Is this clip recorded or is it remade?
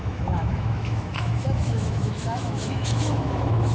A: remade